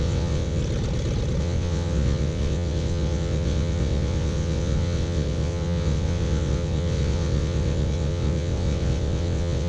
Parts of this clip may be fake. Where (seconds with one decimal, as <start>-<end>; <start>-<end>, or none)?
0.0-0.6; 1.4-9.7